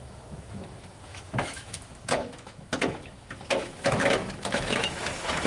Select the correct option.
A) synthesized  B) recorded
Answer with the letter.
A